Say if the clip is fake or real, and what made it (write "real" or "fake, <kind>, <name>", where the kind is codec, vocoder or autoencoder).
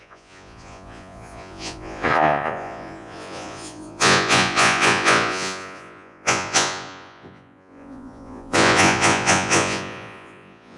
fake, vocoder, Vocos